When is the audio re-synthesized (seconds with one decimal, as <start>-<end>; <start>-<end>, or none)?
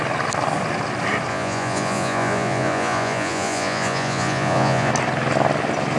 1.3-4.9